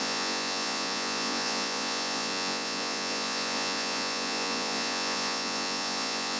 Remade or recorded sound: remade